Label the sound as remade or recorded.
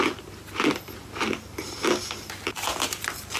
remade